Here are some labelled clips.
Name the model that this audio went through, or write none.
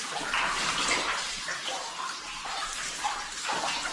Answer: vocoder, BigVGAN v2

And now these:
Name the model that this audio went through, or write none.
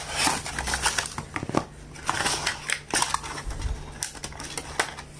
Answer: none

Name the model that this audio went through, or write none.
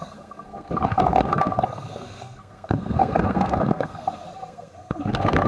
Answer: codec, SNAC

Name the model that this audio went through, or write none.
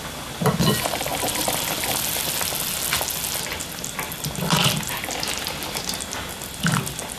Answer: none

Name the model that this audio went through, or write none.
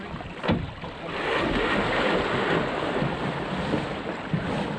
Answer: none